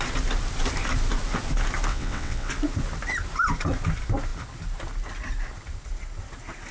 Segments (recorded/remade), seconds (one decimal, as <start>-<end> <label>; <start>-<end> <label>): 0.0-1.9 recorded; 1.9-2.5 remade; 2.5-6.7 recorded

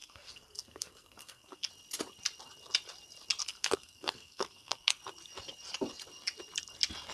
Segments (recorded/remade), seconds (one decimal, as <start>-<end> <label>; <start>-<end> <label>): 0.0-1.7 remade; 1.7-3.4 recorded; 3.4-5.0 remade; 5.0-7.1 recorded

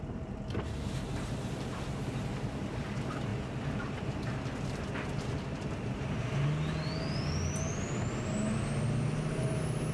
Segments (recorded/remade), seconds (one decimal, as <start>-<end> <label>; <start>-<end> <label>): 0.0-9.9 recorded

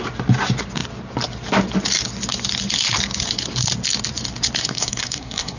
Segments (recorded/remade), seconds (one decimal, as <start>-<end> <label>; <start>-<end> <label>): 0.0-4.6 recorded; 4.6-5.6 remade

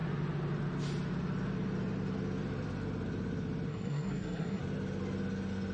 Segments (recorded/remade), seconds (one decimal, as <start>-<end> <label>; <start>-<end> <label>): 0.0-3.7 recorded; 3.7-4.6 remade; 4.6-5.7 recorded